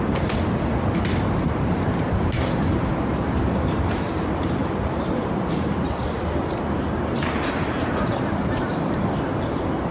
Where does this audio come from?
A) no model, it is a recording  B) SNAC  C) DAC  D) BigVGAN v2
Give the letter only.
D